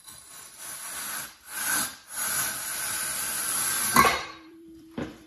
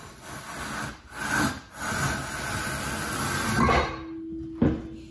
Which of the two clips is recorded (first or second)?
second